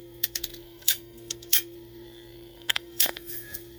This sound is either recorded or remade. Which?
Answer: remade